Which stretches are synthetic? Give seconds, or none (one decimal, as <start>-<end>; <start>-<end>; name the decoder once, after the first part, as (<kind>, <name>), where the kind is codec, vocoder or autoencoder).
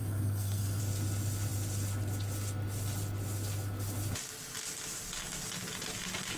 0.0-0.8 (codec, SNAC)